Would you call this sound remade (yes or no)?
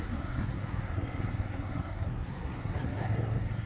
yes